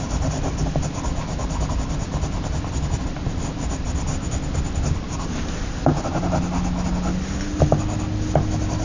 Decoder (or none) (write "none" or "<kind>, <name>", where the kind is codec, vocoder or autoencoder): none